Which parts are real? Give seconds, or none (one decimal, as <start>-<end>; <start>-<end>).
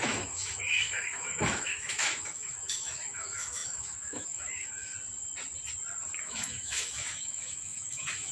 4.9-6.2